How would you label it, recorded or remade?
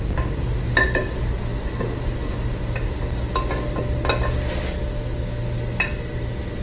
recorded